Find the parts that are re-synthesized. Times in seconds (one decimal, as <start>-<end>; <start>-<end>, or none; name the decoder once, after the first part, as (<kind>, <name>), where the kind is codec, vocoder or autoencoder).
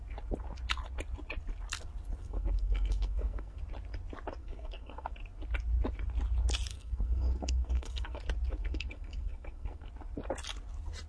2.2-3.6 (codec, SNAC); 4.4-5.1; 6.7-8.2; 8.6-9.9